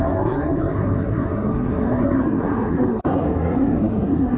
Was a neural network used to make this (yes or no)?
yes